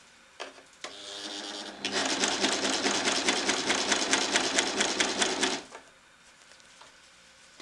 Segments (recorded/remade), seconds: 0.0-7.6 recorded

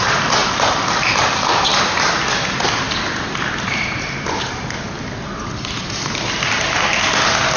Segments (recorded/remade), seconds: 0.0-0.4 recorded; 0.4-1.1 remade; 1.1-7.6 recorded

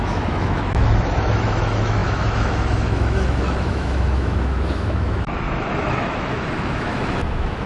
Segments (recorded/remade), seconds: 0.0-7.7 remade

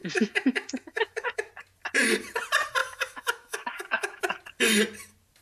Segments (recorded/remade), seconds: 0.0-1.5 remade; 1.5-2.8 recorded; 2.8-4.2 remade; 4.2-5.4 recorded

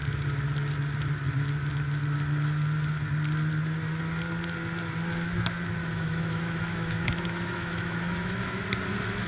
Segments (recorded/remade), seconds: 0.0-5.8 recorded; 5.8-8.6 remade; 8.6-9.3 recorded

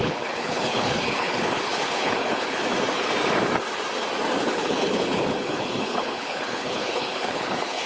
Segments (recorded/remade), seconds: 0.0-2.6 remade; 2.6-4.4 recorded; 4.4-7.9 remade

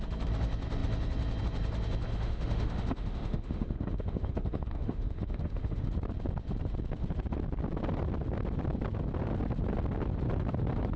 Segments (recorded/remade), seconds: 0.0-2.1 recorded; 2.1-5.9 remade; 5.9-11.0 recorded